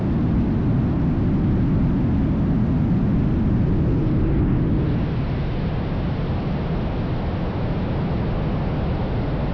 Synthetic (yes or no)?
no